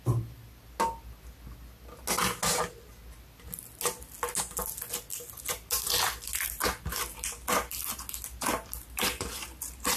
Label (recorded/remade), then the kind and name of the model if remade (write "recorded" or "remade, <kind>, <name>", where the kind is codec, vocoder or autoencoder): recorded